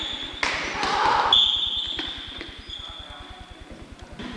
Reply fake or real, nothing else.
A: real